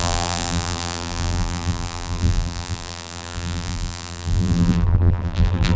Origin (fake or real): fake